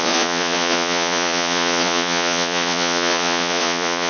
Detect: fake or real fake